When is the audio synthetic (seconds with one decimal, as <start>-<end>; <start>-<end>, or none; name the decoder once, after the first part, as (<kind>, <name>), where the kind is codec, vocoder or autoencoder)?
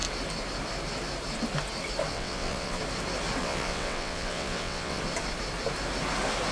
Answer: 2.1-2.8 (vocoder, WaveNeXt); 3.4-5.0